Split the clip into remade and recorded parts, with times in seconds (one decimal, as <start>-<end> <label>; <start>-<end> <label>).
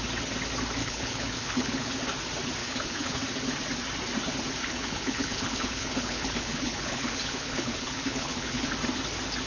0.0-0.8 recorded; 0.8-1.9 remade; 1.9-2.6 recorded; 2.6-3.2 remade; 3.2-4.6 recorded; 4.6-8.7 remade; 8.7-9.5 recorded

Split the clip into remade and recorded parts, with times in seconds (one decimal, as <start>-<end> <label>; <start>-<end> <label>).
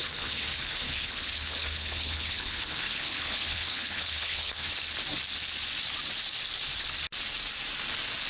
0.0-4.8 remade; 4.8-8.3 recorded